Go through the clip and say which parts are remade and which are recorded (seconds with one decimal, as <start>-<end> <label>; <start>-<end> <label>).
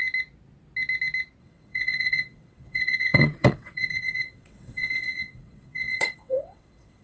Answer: 0.0-1.4 recorded; 1.4-7.0 remade